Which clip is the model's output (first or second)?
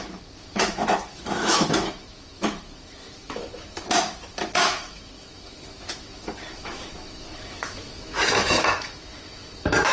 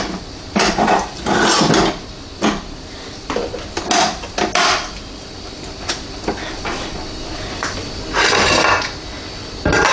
first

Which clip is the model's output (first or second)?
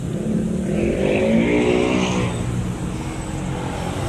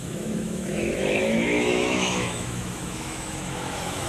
second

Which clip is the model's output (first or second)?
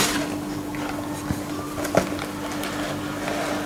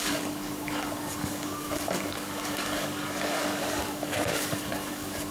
second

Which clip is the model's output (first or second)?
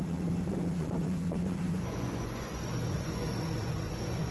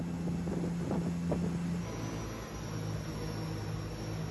first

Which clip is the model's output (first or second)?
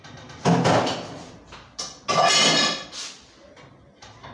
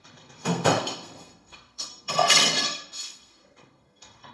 second